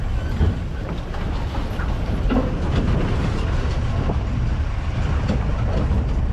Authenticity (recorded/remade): recorded